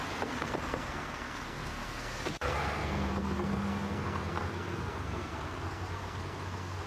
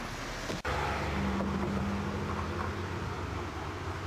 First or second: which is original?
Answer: second